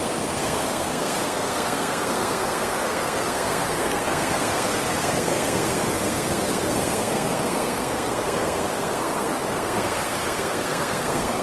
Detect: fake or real fake